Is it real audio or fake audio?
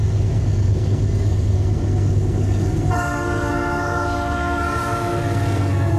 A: fake